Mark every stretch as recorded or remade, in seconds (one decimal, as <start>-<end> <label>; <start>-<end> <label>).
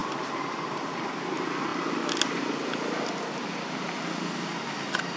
0.0-5.2 recorded